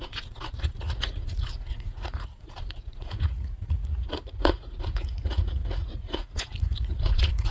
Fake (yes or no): yes